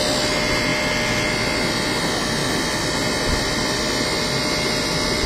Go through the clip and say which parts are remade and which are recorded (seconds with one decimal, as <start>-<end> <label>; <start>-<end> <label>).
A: 0.0-5.3 recorded